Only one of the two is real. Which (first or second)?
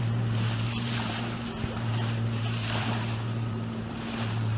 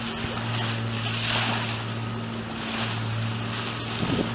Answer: second